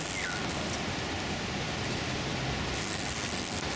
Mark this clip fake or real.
real